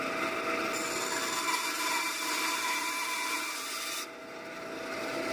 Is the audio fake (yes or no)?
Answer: no